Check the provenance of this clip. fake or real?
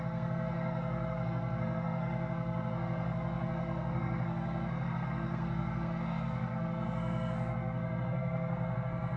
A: fake